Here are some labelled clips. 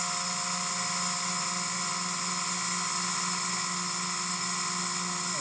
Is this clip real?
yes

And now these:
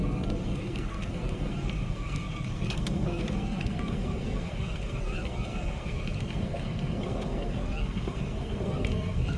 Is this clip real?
no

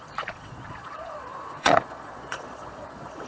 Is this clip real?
no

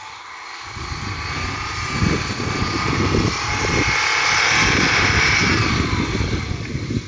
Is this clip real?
yes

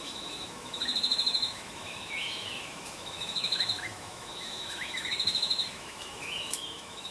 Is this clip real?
no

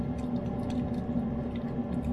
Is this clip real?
yes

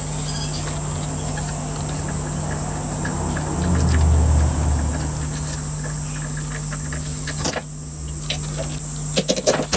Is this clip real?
yes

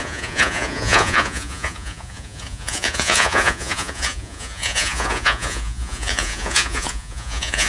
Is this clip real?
no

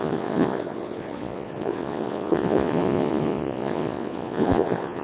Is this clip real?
no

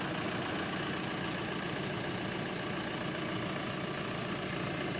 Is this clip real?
yes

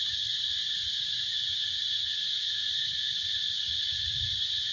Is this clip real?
no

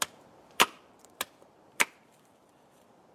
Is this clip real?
no